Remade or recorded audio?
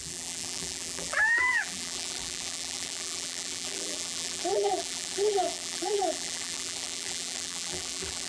remade